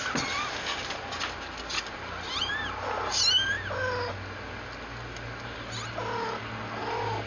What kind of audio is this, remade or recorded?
recorded